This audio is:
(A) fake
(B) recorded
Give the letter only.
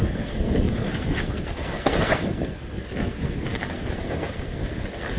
A